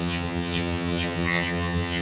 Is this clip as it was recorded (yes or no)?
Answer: no